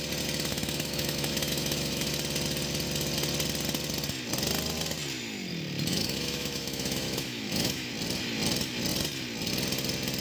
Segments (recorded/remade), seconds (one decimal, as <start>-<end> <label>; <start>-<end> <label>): 0.0-0.5 recorded; 0.5-2.1 remade; 2.1-5.9 recorded; 5.9-7.9 remade; 7.9-10.2 recorded